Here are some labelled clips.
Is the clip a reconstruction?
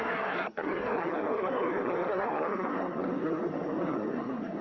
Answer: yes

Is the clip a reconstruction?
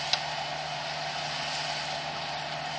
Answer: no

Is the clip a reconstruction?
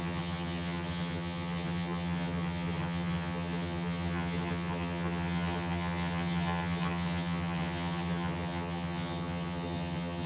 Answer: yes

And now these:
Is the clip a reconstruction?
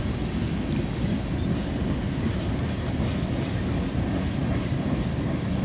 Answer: no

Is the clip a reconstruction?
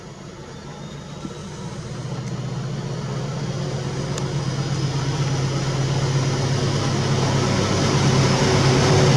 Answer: no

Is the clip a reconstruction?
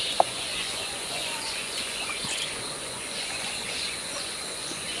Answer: yes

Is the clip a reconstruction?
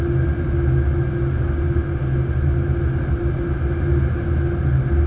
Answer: no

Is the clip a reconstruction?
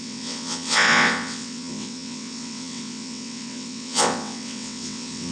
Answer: yes